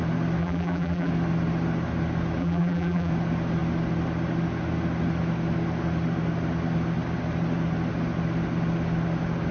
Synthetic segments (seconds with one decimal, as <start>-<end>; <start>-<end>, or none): 0.4-1.1; 2.4-3.1